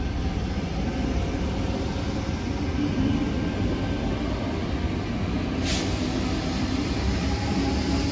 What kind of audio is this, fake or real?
real